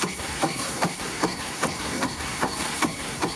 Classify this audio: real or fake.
fake